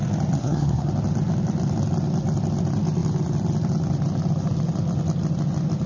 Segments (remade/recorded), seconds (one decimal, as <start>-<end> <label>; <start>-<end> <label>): 0.0-0.4 recorded; 0.4-0.9 remade; 0.9-5.9 recorded